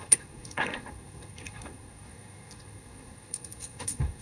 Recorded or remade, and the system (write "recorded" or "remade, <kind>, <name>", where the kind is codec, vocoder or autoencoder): remade, codec, SNAC